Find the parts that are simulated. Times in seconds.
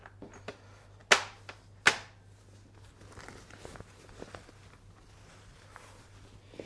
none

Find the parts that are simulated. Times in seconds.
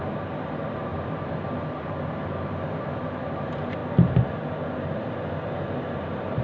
0.0-3.8 (vocoder, BigVGAN v2); 4.8-6.4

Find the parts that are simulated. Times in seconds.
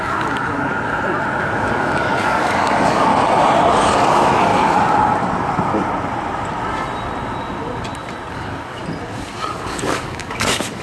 0.0-0.7 (codec, DAC); 1.4-3.1; 3.7-4.5; 8.3-8.8; 9.5-10.8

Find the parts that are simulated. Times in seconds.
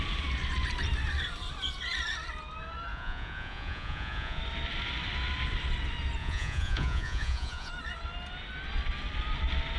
2.9-4.4 (vocoder, Vocos); 6.2-7.7